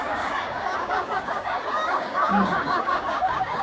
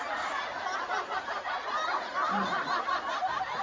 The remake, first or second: first